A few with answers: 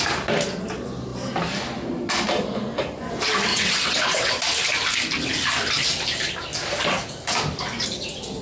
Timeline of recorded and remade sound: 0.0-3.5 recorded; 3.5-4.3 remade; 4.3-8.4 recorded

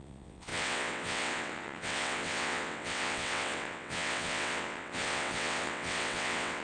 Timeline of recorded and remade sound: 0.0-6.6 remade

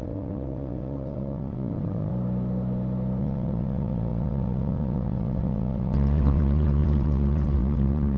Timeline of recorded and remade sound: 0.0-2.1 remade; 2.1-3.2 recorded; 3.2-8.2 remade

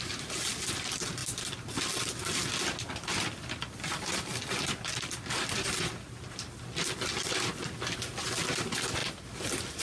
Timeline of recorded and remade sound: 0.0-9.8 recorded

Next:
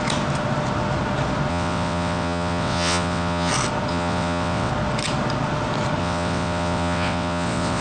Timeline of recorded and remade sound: 0.0-1.5 recorded; 1.5-3.5 remade; 3.5-3.9 recorded; 3.9-4.7 remade; 4.7-6.0 recorded; 6.0-7.8 remade

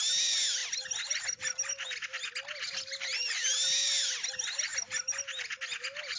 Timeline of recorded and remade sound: 0.0-6.2 recorded